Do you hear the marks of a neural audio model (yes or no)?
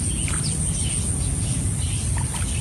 no